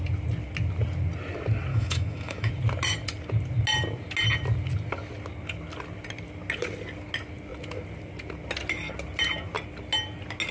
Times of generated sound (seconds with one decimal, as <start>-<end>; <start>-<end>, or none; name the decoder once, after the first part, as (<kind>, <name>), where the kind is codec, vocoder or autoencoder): 1.7-2.5 (autoencoder, DAC-VAE)